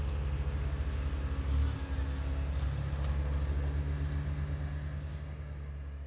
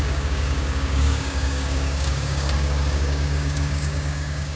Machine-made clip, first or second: second